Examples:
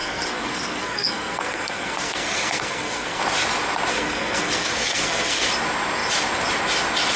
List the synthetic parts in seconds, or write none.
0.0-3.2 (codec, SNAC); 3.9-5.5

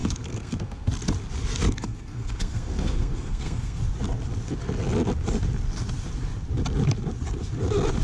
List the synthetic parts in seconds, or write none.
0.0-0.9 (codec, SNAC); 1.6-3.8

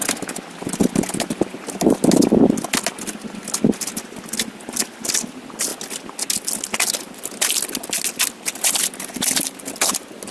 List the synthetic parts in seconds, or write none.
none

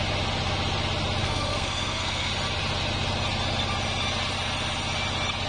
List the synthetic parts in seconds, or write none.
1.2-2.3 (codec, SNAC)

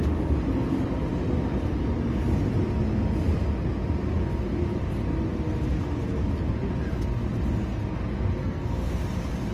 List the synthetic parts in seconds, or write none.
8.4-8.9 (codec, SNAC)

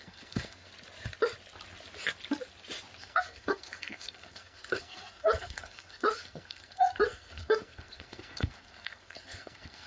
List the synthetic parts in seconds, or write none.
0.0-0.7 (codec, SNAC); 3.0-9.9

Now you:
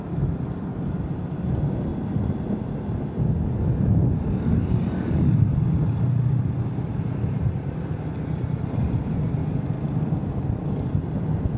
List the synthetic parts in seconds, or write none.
none